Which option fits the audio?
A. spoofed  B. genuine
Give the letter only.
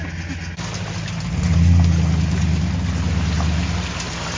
B